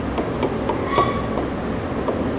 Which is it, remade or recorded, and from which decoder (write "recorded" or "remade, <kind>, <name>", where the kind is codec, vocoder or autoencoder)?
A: recorded